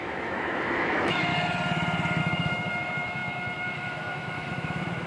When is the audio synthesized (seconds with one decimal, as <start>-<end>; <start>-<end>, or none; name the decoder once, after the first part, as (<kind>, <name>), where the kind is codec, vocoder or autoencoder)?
0.0-1.3 (autoencoder, DAC-VAE); 2.2-5.1